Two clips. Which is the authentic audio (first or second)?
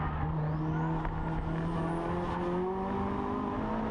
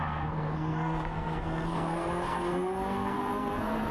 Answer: first